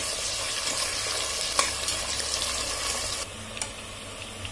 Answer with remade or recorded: recorded